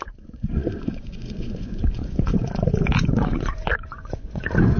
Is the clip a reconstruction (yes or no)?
yes